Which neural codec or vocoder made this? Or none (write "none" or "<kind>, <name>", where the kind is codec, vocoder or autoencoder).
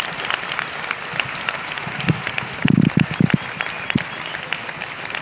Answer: none